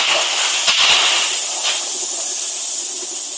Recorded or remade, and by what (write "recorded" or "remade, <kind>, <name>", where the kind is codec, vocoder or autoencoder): recorded